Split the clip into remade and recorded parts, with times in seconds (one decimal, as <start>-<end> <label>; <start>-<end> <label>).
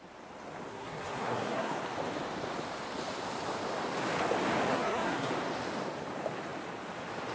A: 0.0-0.7 recorded; 0.7-1.8 remade; 1.8-4.7 recorded; 4.7-5.3 remade; 5.3-7.3 recorded